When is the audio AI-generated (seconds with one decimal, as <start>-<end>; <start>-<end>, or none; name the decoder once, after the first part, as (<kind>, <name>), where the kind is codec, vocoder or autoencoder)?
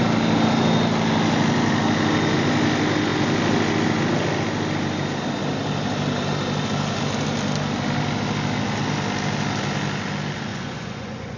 10.5-11.4 (vocoder, Vocos)